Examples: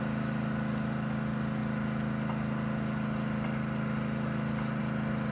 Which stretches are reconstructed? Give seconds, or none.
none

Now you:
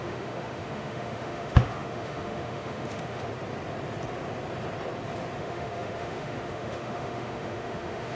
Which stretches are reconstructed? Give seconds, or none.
0.0-3.3 (autoencoder, DAC-VAE); 5.4-8.2

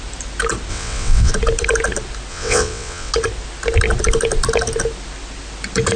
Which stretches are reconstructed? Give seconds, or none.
0.7-1.3 (vocoder, WaveNeXt); 2.3-3.1

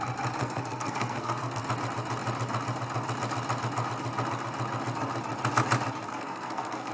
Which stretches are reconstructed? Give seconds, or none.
0.4-1.6 (codec, SNAC); 6.1-6.9

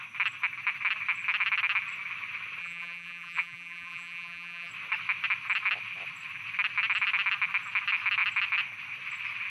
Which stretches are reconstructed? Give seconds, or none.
2.6-4.7 (vocoder, BigVGAN v2)

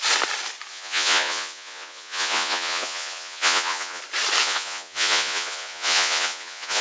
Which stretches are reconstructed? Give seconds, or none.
0.7-4.0 (vocoder, Vocos); 4.4-6.8

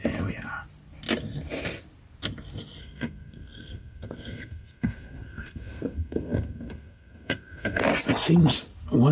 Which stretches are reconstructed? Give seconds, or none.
2.8-7.8 (codec, SNAC)

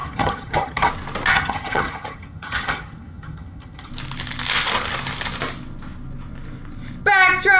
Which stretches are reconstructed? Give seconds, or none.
0.0-0.9 (vocoder, HiFi-GAN); 1.3-3.9